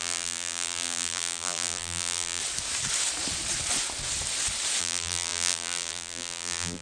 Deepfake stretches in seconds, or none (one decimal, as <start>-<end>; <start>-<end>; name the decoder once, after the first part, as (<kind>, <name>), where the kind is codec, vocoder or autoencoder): 0.0-2.4 (vocoder, BigVGAN v2); 4.8-6.8